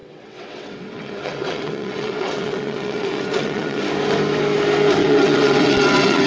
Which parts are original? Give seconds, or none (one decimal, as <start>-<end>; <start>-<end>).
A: 3.8-5.0